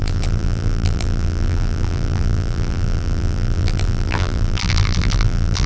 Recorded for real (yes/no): no